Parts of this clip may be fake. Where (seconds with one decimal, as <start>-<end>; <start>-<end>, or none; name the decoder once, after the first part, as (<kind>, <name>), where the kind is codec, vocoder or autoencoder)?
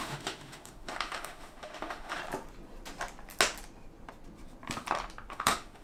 0.0-2.2 (autoencoder, DAC-VAE); 5.3-5.8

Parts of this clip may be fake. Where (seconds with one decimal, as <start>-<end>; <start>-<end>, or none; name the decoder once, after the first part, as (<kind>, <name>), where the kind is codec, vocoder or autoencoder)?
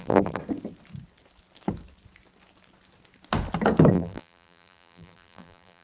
0.0-0.4 (vocoder, BigVGAN v2); 3.9-5.8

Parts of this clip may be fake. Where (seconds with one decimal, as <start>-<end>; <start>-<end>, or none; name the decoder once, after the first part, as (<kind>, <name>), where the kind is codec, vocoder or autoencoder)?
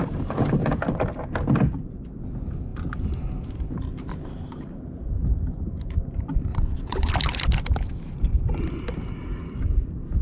6.5-7.1 (vocoder, WaveNeXt)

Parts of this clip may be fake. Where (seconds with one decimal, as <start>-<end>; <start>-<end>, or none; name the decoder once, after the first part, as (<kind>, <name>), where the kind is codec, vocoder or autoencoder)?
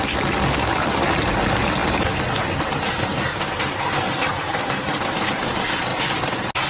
none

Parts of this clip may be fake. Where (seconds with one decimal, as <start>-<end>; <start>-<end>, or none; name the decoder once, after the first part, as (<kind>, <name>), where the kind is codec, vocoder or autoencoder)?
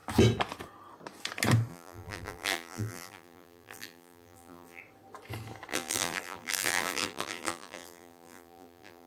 1.7-4.8 (vocoder, BigVGAN v2); 5.7-9.1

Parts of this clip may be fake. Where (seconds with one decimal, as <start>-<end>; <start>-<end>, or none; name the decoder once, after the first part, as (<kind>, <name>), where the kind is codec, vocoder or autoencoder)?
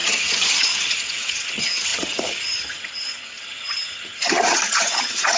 0.0-5.4 (vocoder, HiFi-GAN)